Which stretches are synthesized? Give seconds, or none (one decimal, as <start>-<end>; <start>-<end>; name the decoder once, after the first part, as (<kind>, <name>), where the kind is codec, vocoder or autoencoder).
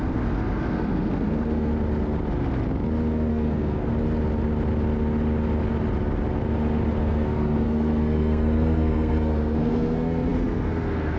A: 0.0-1.7 (codec, SNAC); 3.3-3.9; 7.0-11.2